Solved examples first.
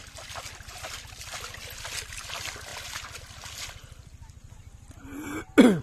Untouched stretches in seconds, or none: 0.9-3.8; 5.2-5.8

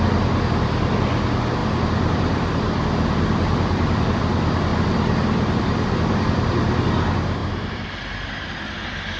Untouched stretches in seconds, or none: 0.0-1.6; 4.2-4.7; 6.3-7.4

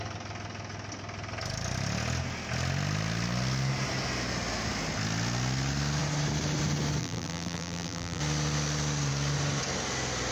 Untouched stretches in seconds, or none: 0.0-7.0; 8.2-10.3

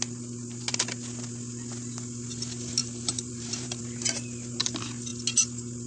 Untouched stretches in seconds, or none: 0.0-2.8; 3.8-5.9

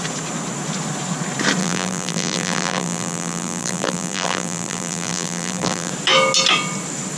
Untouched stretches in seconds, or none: 0.0-1.6; 5.9-7.2

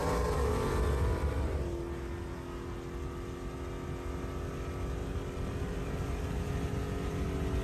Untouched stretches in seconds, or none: 0.5-5.0; 6.5-7.6